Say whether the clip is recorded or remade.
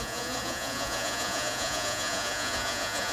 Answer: remade